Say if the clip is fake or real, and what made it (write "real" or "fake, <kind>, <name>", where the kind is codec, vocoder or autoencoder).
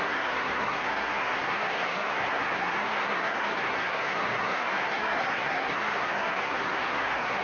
fake, codec, SNAC